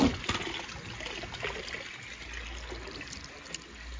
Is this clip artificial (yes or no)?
no